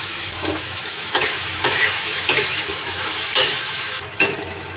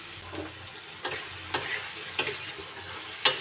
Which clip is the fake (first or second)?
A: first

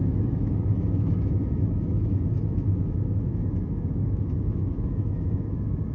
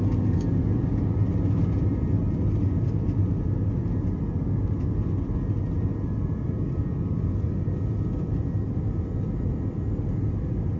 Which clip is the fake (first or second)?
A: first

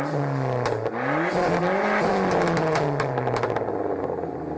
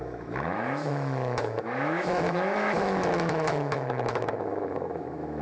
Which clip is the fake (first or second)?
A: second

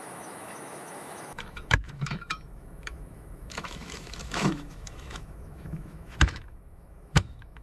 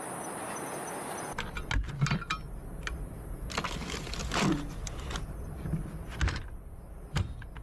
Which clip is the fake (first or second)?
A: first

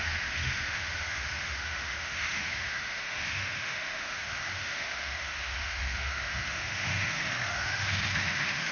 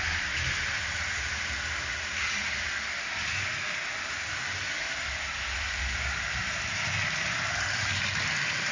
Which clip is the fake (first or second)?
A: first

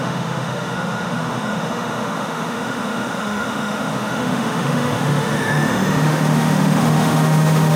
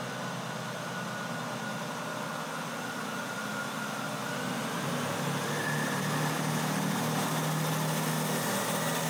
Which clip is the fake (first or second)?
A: first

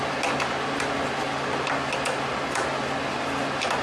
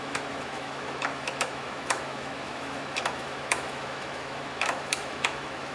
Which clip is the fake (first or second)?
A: second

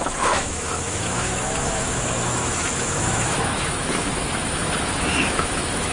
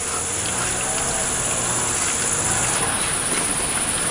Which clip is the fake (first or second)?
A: first